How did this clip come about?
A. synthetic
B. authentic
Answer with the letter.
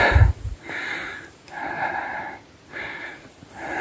B